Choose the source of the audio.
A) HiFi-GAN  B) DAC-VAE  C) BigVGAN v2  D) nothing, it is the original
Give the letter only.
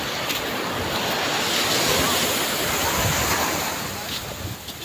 D